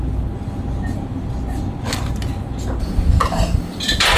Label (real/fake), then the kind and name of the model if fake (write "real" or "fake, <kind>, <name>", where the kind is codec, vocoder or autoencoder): real